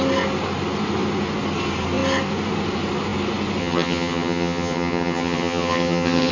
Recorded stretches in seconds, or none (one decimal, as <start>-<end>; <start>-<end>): 0.0-3.6